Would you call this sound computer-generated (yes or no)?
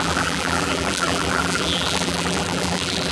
yes